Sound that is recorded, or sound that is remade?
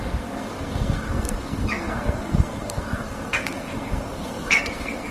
remade